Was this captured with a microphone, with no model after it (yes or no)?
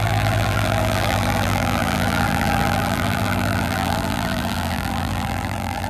no